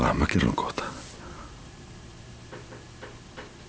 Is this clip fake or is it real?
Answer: real